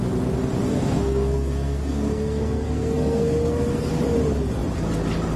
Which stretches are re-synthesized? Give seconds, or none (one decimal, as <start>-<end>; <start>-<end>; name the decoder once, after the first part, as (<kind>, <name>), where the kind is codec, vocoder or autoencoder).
0.7-3.9 (codec, SNAC)